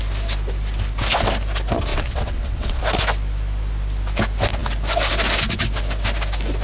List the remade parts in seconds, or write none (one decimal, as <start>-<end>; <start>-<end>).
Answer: 1.9-2.8